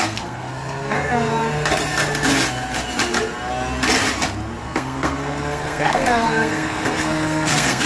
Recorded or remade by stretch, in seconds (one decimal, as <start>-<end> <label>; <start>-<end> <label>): 0.0-1.3 remade; 1.3-4.6 recorded; 4.6-7.9 remade